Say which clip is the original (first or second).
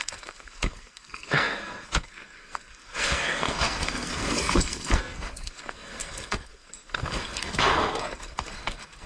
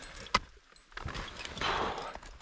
second